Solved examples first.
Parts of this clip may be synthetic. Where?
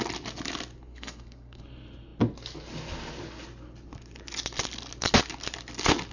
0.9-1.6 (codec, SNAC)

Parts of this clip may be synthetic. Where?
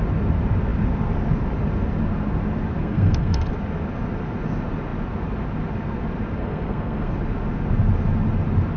2.8-3.5 (codec, SNAC); 6.4-7.1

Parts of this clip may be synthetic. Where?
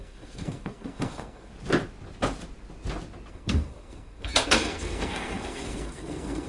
0.0-1.5 (codec, SNAC); 3.3-6.5